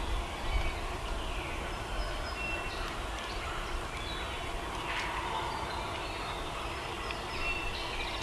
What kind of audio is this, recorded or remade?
recorded